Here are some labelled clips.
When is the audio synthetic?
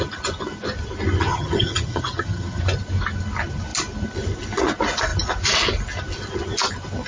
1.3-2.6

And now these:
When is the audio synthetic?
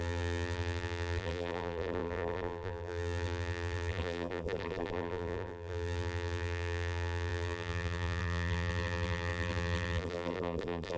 0.0-11.0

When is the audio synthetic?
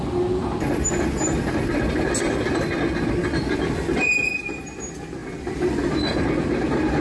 none